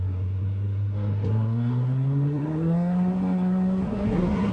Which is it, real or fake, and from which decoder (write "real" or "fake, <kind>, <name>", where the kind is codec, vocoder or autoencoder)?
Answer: fake, codec, SNAC